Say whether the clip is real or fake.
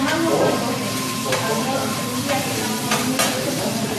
real